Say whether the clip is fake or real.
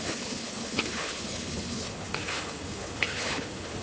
fake